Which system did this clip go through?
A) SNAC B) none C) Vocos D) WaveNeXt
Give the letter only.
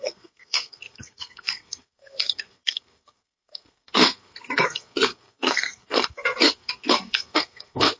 A